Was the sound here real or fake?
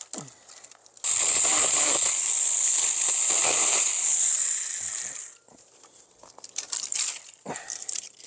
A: real